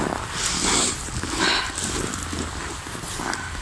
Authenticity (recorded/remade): recorded